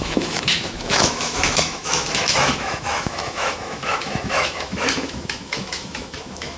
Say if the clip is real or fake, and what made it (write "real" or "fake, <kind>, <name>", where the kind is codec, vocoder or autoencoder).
fake, autoencoder, DAC-VAE